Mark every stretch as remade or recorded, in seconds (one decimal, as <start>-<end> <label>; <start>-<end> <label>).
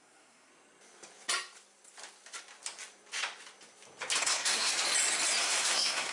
0.0-0.5 remade; 0.5-4.2 recorded; 4.2-4.7 remade; 4.7-5.4 recorded; 5.4-6.1 remade